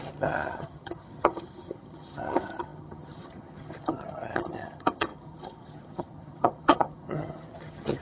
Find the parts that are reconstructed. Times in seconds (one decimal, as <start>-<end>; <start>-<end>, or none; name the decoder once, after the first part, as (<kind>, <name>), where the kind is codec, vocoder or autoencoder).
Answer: 0.0-8.0 (vocoder, HiFi-GAN)